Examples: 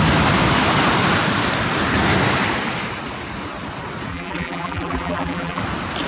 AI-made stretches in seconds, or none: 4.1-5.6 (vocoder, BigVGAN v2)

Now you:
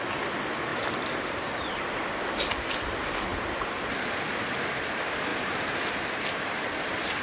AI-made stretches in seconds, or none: 0.7-1.7 (vocoder, BigVGAN v2); 5.3-5.8

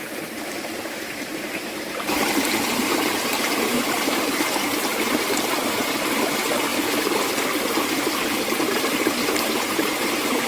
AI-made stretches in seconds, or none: 0.0-6.7 (vocoder, BigVGAN v2); 7.8-10.5

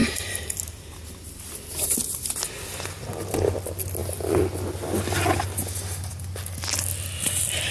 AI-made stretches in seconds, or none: 0.0-0.9 (vocoder, BigVGAN v2)

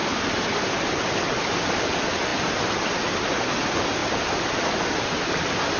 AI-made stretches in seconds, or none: 4.0-5.8 (vocoder, BigVGAN v2)

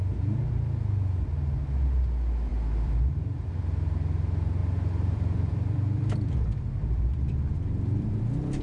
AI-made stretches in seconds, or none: 2.5-3.5 (vocoder, BigVGAN v2); 4.6-8.2

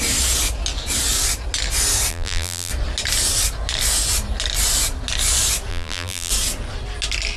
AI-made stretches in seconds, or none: 2.1-2.7 (vocoder, BigVGAN v2); 5.7-6.3